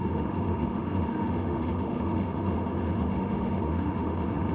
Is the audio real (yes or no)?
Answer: no